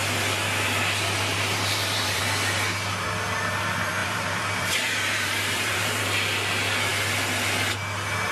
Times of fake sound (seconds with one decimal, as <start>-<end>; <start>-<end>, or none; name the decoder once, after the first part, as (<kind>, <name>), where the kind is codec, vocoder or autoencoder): 1.3-2.2 (vocoder, BigVGAN v2); 4.0-6.0